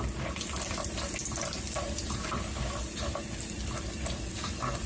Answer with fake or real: real